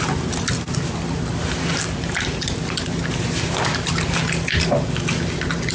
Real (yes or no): yes